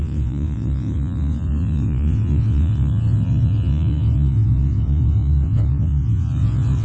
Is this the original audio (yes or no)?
no